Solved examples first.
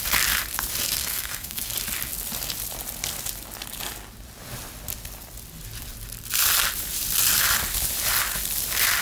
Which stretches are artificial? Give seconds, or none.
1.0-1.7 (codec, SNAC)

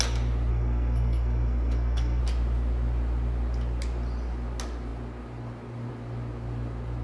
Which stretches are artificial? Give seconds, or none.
0.5-2.2 (codec, SNAC)

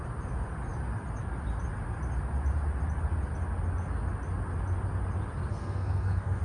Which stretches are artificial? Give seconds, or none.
5.5-6.4 (codec, SNAC)

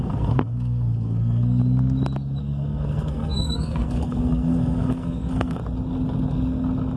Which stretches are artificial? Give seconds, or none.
0.0-1.6 (codec, SNAC); 2.4-5.6